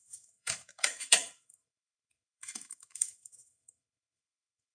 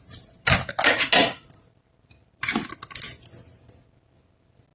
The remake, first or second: first